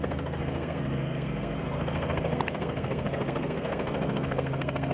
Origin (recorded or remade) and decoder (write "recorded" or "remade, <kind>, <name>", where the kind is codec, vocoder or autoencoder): remade, codec, SNAC